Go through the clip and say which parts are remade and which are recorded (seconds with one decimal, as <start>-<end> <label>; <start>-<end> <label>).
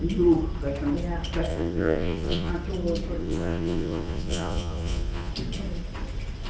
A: 0.0-1.5 recorded; 1.5-2.5 remade; 2.5-3.2 recorded; 3.2-5.3 remade; 5.3-6.5 recorded